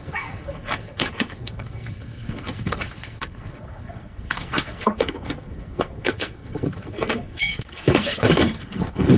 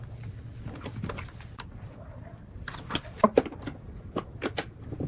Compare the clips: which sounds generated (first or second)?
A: first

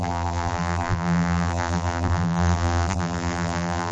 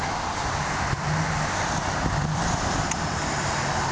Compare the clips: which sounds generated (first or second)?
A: first